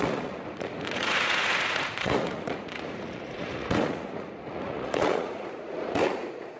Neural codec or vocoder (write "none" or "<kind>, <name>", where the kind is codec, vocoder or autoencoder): vocoder, Vocos